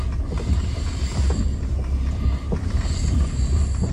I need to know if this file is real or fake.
real